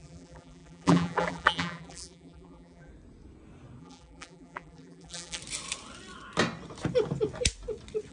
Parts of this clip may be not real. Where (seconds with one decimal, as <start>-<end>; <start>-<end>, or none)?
0.0-2.9; 3.8-5.4